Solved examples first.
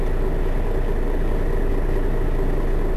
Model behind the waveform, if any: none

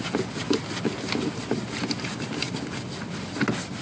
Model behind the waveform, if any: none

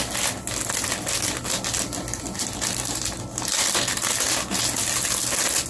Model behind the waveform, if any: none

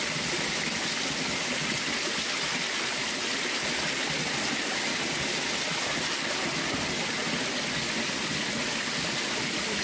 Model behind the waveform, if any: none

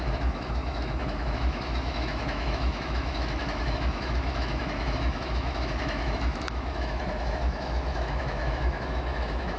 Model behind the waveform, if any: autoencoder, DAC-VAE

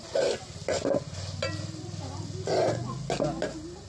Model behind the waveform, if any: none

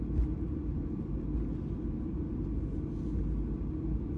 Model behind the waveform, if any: none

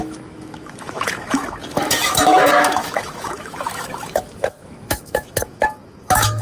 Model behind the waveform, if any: autoencoder, DAC-VAE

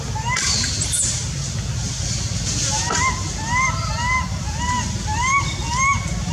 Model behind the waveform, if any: none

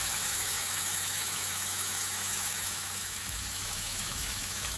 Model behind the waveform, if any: autoencoder, DAC-VAE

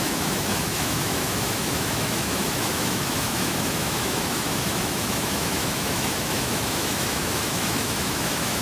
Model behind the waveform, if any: autoencoder, DAC-VAE